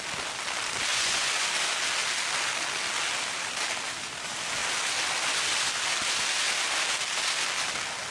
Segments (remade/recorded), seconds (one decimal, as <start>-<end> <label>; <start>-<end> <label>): 0.0-0.9 recorded; 0.9-1.5 remade; 1.5-8.1 recorded